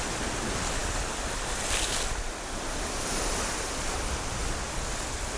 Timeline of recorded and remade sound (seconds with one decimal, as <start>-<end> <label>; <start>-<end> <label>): 0.0-4.4 remade; 4.4-5.4 recorded